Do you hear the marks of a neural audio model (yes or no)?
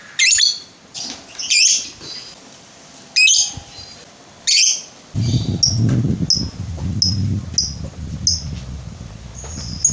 no